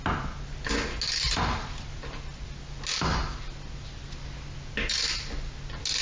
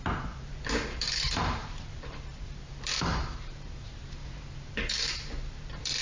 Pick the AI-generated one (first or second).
second